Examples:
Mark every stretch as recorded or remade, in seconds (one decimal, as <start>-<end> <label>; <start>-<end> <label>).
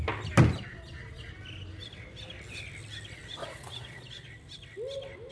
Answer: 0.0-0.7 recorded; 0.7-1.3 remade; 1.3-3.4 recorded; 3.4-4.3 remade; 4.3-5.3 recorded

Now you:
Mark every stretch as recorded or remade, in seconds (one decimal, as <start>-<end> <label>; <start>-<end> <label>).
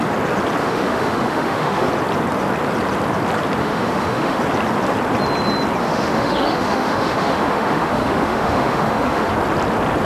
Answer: 0.0-0.6 recorded; 0.6-1.9 remade; 1.9-3.6 recorded; 3.6-4.4 remade; 4.4-5.8 recorded; 5.8-9.3 remade; 9.3-10.1 recorded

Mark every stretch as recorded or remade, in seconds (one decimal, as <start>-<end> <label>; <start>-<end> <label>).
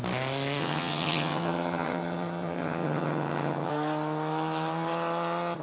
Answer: 0.0-0.6 recorded; 0.6-3.7 remade; 3.7-5.6 recorded